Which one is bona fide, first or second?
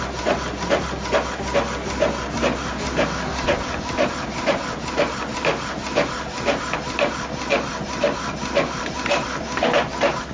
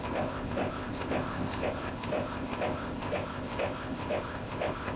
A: first